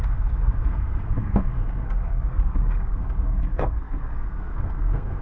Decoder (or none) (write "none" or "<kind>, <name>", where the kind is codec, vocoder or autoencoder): codec, SNAC